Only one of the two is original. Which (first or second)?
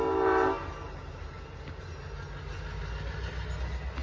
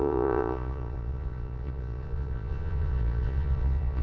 first